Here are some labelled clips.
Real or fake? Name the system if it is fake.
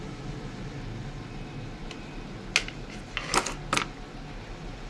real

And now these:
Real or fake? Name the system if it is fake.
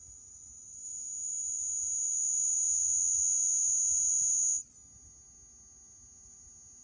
real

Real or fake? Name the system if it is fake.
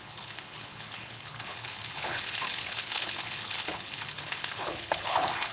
fake, codec, HILCodec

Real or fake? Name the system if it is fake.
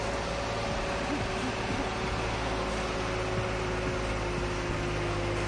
real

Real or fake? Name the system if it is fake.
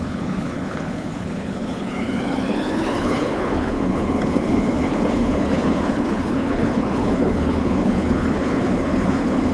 fake, codec, HILCodec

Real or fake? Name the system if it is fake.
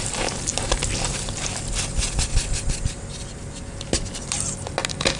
real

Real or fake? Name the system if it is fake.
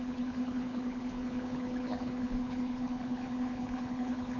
fake, codec, HILCodec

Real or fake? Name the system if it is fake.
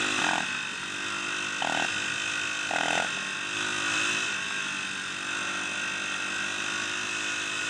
real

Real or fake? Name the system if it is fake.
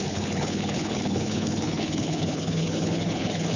fake, codec, HILCodec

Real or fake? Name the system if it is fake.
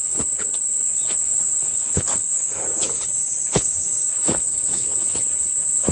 fake, codec, HILCodec